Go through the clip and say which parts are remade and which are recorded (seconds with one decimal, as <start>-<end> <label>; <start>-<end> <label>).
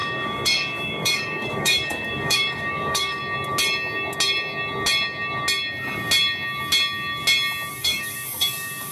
0.0-3.2 remade; 3.2-7.7 recorded; 7.7-8.9 remade